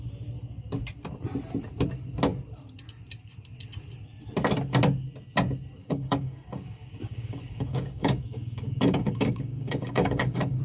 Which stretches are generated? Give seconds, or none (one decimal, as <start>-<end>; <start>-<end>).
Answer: 5.8-10.6